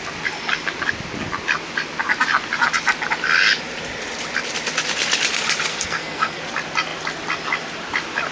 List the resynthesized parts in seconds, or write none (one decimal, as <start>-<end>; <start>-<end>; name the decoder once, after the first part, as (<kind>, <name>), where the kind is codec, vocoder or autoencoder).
5.7-6.4 (codec, SNAC)